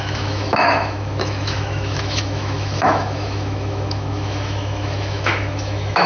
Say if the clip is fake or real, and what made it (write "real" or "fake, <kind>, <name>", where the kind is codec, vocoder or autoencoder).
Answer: fake, autoencoder, DAC-VAE